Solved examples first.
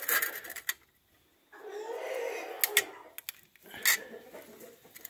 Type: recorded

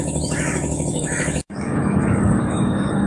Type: remade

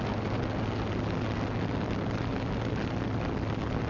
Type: recorded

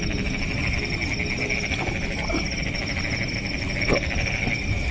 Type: recorded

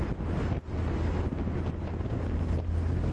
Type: recorded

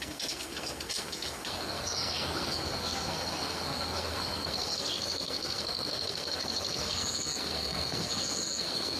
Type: remade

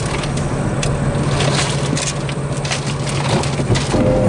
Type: recorded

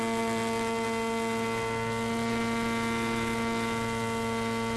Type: recorded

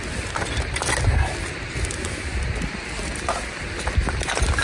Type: recorded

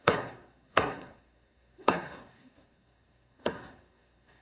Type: remade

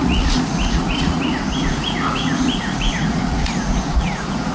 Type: remade